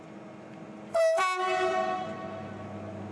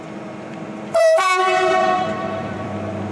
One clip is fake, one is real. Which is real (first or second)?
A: first